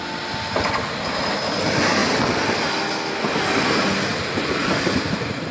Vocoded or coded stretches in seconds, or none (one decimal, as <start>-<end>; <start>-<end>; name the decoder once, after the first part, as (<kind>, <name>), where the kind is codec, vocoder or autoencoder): 2.0-2.5 (vocoder, BigVGAN v2); 4.1-5.5